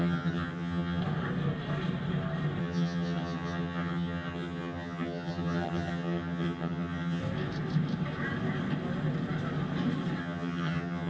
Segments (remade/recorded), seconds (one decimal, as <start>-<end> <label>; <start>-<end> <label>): 0.0-1.0 remade; 1.0-2.6 recorded; 2.6-7.2 remade; 7.2-10.2 recorded; 10.2-11.1 remade